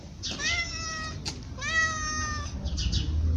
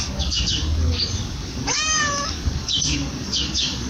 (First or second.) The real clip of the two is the first